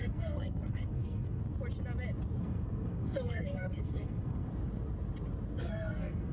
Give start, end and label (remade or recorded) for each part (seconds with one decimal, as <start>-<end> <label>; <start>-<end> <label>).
0.0-1.4 remade; 1.4-2.4 recorded; 2.4-4.5 remade; 4.5-5.6 recorded; 5.6-6.3 remade